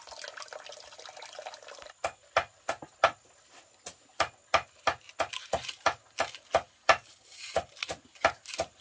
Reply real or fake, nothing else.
real